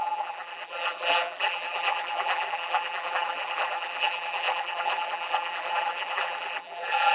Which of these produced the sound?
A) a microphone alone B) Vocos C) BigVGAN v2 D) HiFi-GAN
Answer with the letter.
C